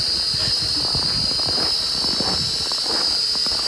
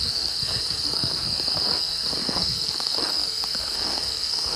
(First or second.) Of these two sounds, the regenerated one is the second